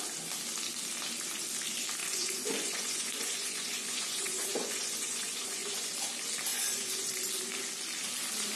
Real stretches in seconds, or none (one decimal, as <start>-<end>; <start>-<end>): 0.0-2.0; 5.9-6.5; 7.1-8.6